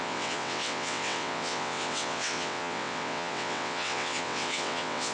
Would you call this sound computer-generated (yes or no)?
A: yes